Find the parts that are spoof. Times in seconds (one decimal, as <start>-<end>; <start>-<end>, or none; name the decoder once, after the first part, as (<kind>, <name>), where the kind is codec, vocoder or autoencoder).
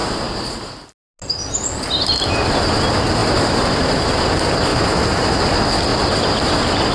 0.0-0.7 (vocoder, BigVGAN v2); 3.2-4.1; 4.7-5.4